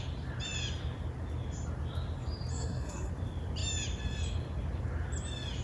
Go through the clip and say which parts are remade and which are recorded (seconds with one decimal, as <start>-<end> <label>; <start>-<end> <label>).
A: 0.0-2.5 recorded; 2.5-3.1 remade; 3.1-5.6 recorded

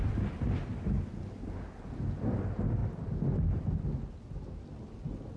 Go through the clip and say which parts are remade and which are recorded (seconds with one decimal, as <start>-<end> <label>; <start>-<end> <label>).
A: 0.0-5.4 recorded

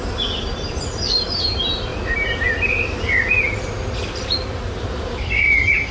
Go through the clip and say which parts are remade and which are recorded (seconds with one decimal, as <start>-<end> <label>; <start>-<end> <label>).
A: 0.0-1.2 recorded; 1.2-1.9 remade; 1.9-5.1 recorded; 5.1-5.9 remade